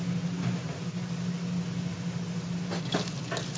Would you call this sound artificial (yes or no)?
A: no